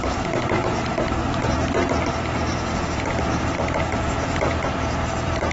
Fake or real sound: fake